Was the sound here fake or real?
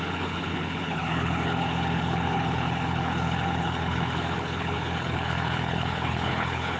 fake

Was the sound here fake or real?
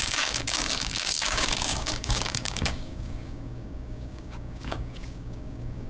fake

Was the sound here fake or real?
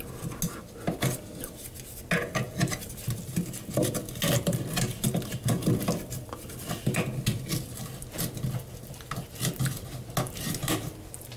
real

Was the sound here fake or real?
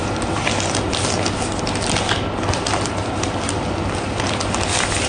real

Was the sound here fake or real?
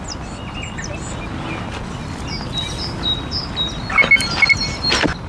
real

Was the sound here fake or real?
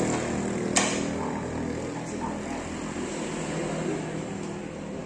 real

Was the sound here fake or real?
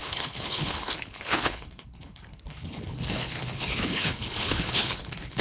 fake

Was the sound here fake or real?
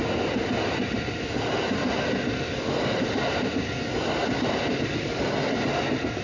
real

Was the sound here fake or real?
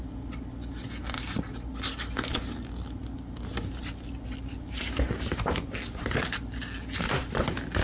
real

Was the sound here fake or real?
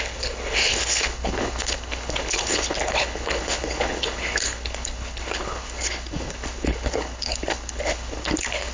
fake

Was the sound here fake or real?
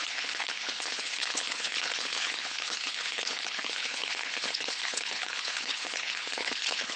fake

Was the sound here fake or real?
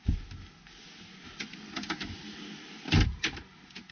real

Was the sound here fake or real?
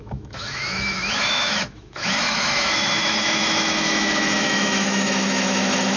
fake